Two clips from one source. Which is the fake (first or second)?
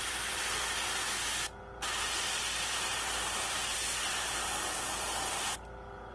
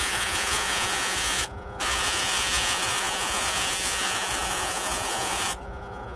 second